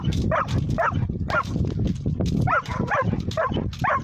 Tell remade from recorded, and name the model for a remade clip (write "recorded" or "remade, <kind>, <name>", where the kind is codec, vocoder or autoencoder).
recorded